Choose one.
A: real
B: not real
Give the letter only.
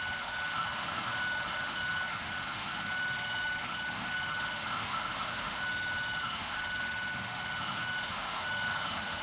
B